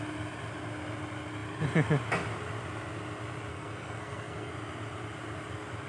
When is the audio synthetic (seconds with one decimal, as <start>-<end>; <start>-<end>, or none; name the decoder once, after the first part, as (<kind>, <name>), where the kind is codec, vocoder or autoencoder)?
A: 3.5-4.5 (codec, SNAC)